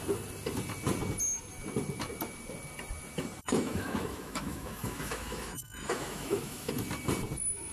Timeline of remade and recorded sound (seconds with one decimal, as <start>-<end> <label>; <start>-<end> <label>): 0.0-3.4 recorded; 3.4-6.7 remade; 6.7-7.7 recorded